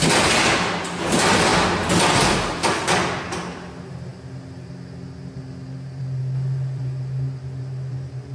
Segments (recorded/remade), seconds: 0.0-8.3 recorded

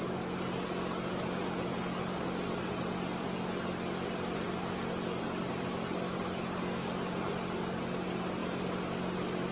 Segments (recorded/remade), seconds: 0.0-9.5 recorded

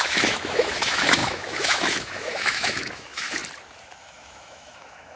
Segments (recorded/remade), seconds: 0.0-3.4 remade; 3.4-4.0 recorded; 4.0-5.2 remade

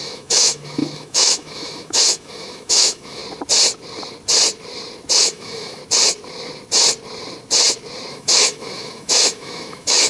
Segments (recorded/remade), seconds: 0.0-3.2 remade; 3.2-5.2 recorded; 5.2-5.8 remade; 5.8-8.1 recorded; 8.1-10.1 remade